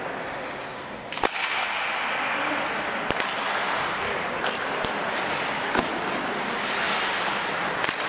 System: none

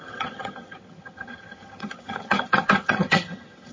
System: vocoder, HiFi-GAN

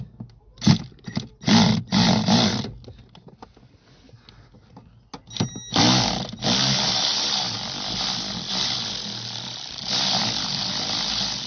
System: none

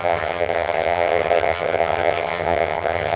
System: vocoder, HiFi-GAN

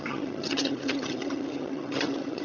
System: vocoder, HiFi-GAN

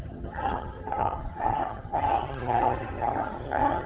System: vocoder, HiFi-GAN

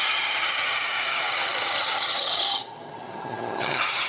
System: vocoder, HiFi-GAN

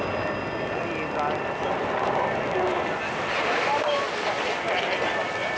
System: none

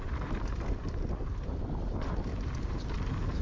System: none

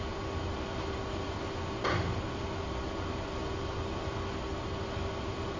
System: none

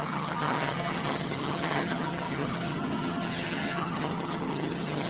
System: vocoder, HiFi-GAN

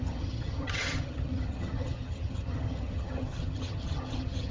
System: vocoder, HiFi-GAN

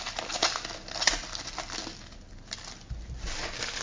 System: none